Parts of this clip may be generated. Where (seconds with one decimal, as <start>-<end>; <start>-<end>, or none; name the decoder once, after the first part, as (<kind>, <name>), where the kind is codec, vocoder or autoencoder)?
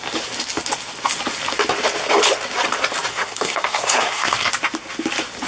3.1-4.5 (codec, SNAC)